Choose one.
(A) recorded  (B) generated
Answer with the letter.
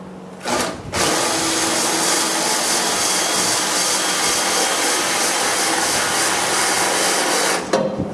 A